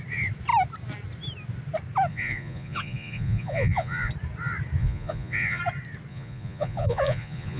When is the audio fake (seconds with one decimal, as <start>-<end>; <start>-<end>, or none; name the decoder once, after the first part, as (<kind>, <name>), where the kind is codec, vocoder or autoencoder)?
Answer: 2.1-4.1 (vocoder, Vocos); 4.8-5.6; 6.1-7.6